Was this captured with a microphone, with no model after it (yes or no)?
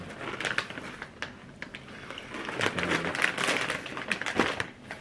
yes